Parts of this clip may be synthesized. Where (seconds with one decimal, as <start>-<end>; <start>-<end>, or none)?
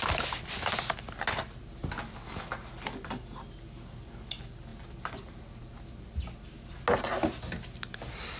none